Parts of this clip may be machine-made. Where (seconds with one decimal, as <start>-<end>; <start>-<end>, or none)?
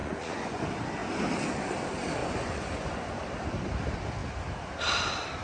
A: 0.0-0.6; 2.2-3.2